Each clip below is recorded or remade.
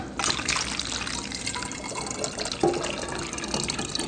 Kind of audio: recorded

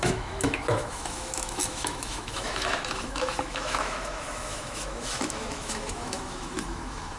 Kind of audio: remade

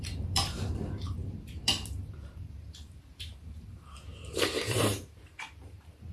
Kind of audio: remade